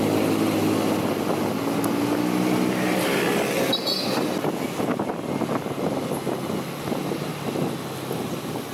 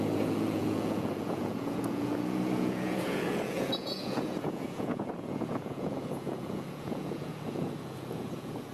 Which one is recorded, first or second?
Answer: first